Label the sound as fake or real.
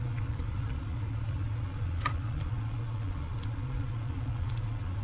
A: fake